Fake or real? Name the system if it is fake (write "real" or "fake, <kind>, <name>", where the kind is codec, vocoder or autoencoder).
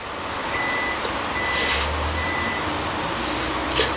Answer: real